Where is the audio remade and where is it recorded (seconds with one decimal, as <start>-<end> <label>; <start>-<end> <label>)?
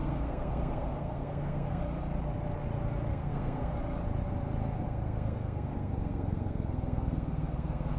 0.0-1.8 remade; 1.8-3.1 recorded; 3.1-3.8 remade; 3.8-4.6 recorded; 4.6-8.0 remade